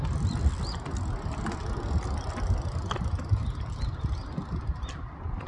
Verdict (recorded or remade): recorded